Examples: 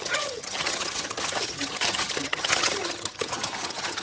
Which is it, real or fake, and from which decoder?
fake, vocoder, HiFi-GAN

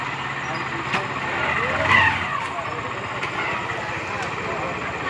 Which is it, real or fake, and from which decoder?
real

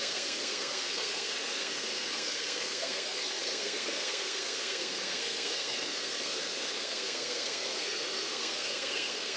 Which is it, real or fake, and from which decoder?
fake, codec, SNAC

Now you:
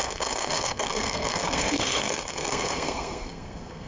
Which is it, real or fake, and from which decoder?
fake, codec, SNAC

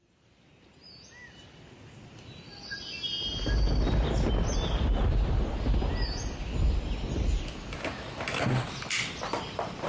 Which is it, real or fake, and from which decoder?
real